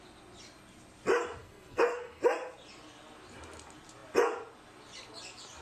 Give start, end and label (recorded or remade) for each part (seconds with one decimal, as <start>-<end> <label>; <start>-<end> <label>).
0.0-1.4 recorded; 1.4-2.2 remade; 2.2-5.6 recorded